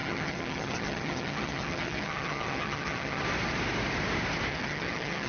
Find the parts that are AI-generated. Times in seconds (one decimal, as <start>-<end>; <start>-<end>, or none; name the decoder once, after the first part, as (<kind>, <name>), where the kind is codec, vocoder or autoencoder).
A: 0.0-3.2 (vocoder, HiFi-GAN); 4.5-5.3